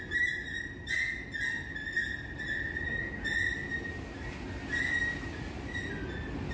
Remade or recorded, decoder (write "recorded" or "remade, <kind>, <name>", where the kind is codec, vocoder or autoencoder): recorded